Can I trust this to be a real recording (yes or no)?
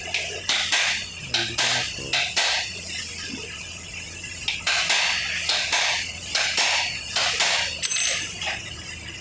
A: yes